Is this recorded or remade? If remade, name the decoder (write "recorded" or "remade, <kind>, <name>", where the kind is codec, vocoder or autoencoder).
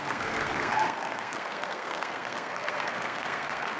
remade, codec, SNAC